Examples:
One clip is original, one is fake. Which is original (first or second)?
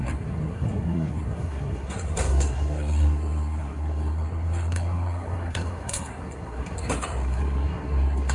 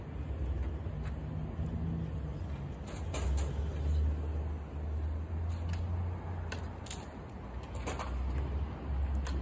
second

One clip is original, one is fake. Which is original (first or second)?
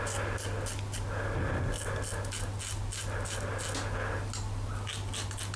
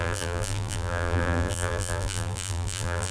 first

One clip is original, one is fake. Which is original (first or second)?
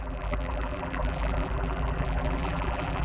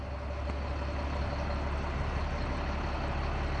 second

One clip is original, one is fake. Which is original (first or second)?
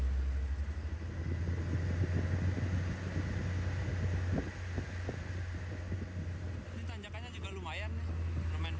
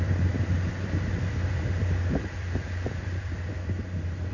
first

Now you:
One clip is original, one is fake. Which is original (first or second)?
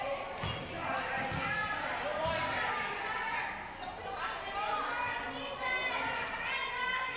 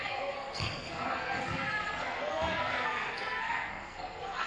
first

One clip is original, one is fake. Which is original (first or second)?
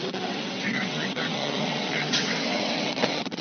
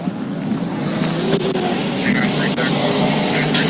second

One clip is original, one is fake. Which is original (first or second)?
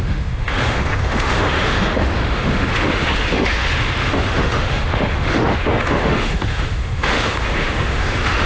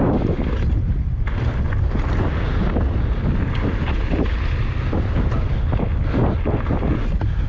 second